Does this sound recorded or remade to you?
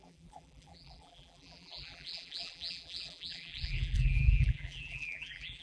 remade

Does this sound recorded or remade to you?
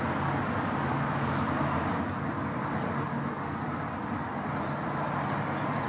recorded